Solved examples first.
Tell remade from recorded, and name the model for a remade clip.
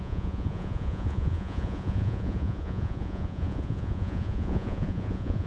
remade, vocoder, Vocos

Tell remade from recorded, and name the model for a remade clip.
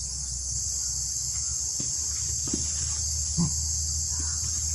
recorded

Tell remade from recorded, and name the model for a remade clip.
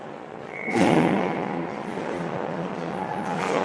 remade, vocoder, Vocos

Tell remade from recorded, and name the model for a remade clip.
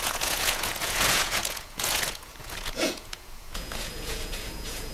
remade, vocoder, Vocos